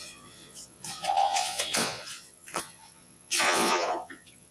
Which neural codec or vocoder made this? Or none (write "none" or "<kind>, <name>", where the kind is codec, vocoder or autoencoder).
vocoder, Vocos